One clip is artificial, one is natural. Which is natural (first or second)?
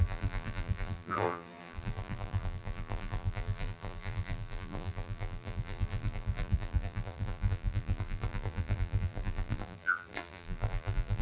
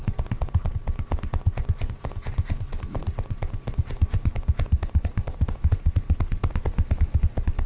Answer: second